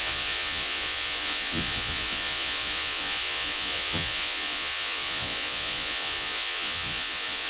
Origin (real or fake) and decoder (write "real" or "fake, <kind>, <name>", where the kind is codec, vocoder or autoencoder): fake, vocoder, Vocos